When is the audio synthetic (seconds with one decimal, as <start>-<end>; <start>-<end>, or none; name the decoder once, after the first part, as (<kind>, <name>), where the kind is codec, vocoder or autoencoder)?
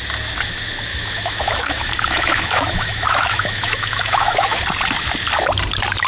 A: 0.9-4.6 (autoencoder, DAC-VAE)